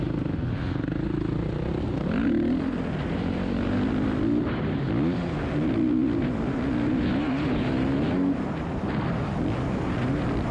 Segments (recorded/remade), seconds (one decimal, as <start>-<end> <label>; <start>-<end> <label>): 0.0-10.5 recorded

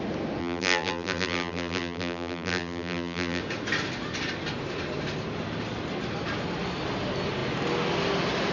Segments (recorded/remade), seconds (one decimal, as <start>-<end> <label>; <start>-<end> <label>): 0.0-0.4 recorded; 0.4-3.4 remade; 3.4-8.5 recorded

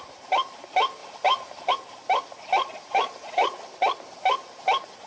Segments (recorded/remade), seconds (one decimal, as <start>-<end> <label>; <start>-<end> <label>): 0.0-5.1 recorded

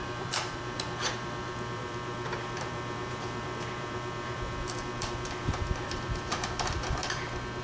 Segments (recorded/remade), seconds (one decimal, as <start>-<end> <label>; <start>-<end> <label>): 0.0-7.0 remade; 7.0-7.6 recorded